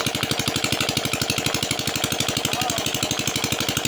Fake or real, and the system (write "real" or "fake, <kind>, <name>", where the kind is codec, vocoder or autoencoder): real